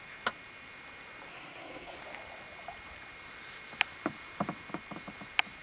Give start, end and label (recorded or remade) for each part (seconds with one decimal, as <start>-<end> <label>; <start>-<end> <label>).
0.0-1.3 recorded; 1.3-2.0 remade; 2.0-5.6 recorded

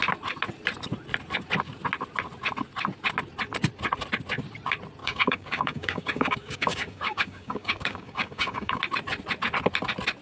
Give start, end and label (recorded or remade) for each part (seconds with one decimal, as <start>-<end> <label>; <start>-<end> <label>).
0.0-5.0 recorded; 5.0-8.8 remade; 8.8-10.2 recorded

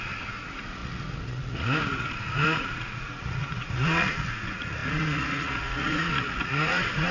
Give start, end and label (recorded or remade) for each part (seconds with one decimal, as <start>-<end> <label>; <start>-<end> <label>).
0.0-7.1 remade

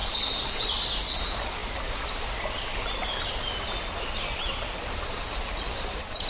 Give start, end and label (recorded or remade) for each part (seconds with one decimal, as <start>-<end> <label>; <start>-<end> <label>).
0.0-6.3 recorded

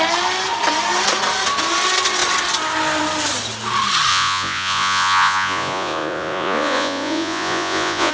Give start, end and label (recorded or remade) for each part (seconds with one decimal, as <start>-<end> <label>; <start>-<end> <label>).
0.0-4.1 recorded; 4.1-8.1 remade

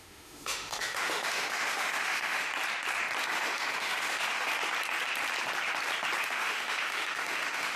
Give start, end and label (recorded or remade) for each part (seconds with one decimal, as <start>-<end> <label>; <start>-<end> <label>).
0.0-2.5 remade; 2.5-3.2 recorded; 3.2-4.5 remade; 4.5-6.2 recorded; 6.2-7.8 remade

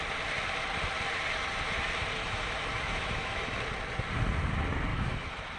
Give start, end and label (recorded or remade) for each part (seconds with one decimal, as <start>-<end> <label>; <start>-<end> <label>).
0.0-2.2 recorded; 2.2-3.5 remade; 3.5-4.9 recorded; 4.9-5.6 remade

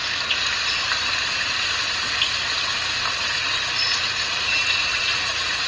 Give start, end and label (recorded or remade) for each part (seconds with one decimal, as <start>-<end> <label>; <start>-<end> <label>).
0.0-4.3 recorded; 4.3-5.7 remade